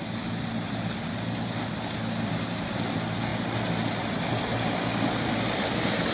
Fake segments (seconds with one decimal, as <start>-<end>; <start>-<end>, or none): none